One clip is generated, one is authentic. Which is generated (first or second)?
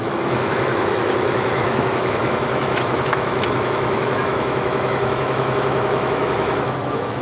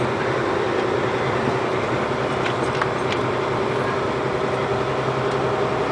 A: first